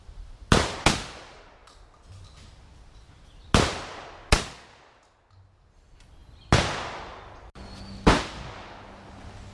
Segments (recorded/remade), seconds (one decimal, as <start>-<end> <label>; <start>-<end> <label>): 0.0-9.5 recorded